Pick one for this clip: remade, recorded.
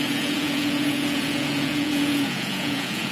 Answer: remade